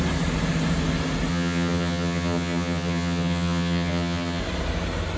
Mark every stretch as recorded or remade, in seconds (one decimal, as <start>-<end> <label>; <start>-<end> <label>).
0.0-1.3 recorded; 1.3-4.4 remade; 4.4-5.2 recorded